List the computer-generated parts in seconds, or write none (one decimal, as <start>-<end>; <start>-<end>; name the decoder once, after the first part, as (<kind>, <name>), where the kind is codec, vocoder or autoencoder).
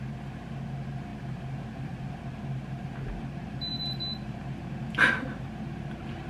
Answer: none